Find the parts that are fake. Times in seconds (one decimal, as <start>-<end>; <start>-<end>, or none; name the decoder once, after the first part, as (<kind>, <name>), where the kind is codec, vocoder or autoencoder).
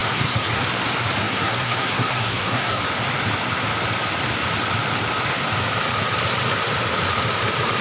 0.0-0.6 (codec, SNAC); 1.2-2.8